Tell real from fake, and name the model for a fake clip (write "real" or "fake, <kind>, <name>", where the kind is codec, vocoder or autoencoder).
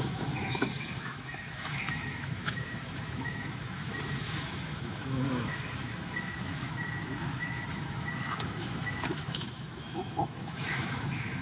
fake, autoencoder, DAC-VAE